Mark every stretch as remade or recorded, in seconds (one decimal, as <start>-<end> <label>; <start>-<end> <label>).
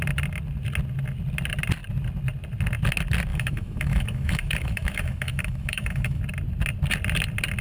0.0-3.3 recorded; 3.3-6.2 remade; 6.2-7.6 recorded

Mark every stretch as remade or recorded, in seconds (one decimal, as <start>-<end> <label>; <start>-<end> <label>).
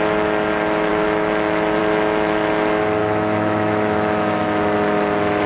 0.0-0.9 recorded; 0.9-1.8 remade; 1.8-3.0 recorded; 3.0-4.6 remade; 4.6-5.5 recorded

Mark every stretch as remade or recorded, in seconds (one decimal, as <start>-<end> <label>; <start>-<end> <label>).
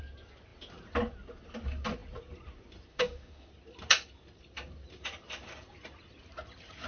0.0-2.9 recorded; 2.9-3.5 remade; 3.5-6.9 recorded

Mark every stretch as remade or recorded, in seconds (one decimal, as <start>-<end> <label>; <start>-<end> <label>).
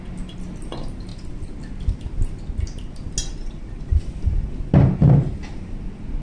0.0-6.2 recorded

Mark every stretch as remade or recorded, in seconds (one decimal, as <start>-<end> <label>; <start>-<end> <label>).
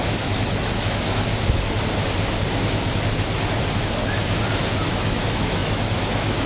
0.0-1.3 remade; 1.3-4.8 recorded; 4.8-6.5 remade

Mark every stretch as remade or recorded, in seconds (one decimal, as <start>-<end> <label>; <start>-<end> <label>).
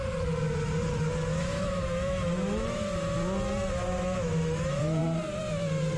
0.0-1.4 recorded; 1.4-3.2 remade; 3.2-3.7 recorded; 3.7-5.0 remade; 5.0-6.0 recorded